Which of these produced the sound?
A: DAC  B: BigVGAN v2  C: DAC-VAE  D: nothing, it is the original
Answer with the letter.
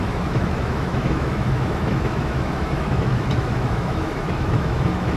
C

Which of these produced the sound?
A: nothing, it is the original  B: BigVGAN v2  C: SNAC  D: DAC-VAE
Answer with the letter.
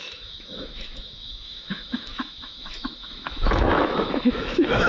D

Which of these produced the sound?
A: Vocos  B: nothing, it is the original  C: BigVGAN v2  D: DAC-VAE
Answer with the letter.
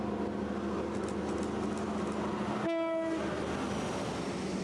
B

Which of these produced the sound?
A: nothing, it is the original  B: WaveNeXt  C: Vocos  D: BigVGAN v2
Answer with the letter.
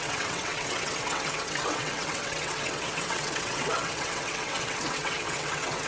B